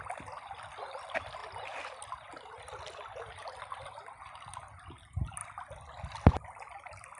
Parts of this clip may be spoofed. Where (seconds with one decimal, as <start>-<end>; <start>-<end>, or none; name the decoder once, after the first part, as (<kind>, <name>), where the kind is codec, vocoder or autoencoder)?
none